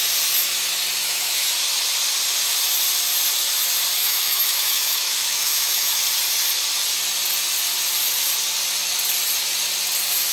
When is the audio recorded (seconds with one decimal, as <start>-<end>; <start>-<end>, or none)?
0.0-1.0; 1.5-4.0; 6.0-10.3